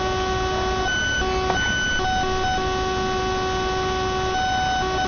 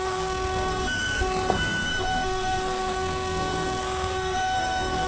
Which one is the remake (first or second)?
second